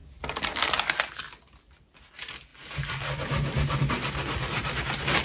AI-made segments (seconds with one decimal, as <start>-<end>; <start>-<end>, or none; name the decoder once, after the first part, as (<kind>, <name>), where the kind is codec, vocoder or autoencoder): none

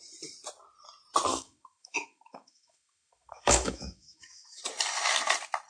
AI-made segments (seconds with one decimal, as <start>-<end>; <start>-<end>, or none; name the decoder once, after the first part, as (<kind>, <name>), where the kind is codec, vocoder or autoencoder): 1.3-4.6 (autoencoder, DAC-VAE)